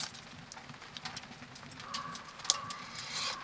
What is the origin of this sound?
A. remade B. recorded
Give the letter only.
B